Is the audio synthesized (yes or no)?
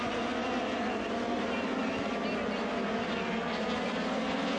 no